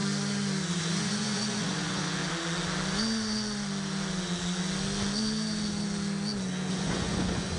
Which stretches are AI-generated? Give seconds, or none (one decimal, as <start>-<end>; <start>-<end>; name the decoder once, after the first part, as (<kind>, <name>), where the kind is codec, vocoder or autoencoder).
0.8-2.2 (vocoder, Vocos); 6.7-7.6